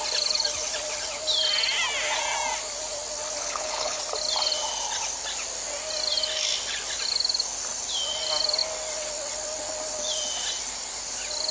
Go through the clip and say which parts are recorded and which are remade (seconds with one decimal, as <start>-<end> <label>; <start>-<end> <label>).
0.0-3.4 recorded; 3.4-4.0 remade; 4.0-11.5 recorded